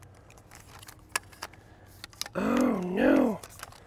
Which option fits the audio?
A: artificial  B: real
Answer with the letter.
B